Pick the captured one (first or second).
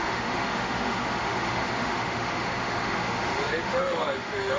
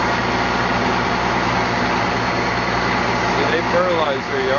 second